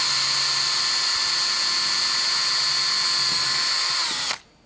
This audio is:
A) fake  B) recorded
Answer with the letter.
B